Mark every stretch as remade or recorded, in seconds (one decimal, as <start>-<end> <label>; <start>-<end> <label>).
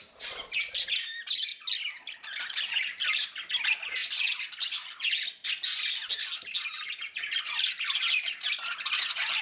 0.0-9.4 recorded